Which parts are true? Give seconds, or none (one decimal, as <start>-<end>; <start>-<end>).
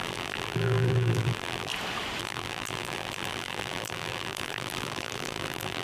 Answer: 1.7-2.2